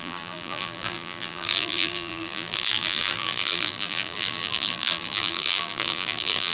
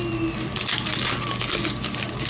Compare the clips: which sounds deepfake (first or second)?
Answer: first